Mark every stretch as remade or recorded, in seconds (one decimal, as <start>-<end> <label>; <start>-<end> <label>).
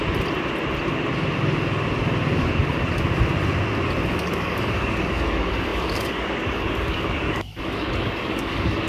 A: 0.0-4.1 recorded; 4.1-8.9 remade